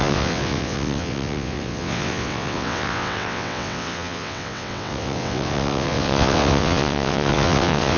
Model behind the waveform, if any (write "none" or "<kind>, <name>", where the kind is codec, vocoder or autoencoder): vocoder, WaveNeXt